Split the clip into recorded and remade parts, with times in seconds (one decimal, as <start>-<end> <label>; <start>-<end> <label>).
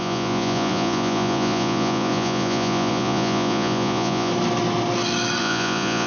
0.0-4.3 remade; 4.3-5.4 recorded; 5.4-6.1 remade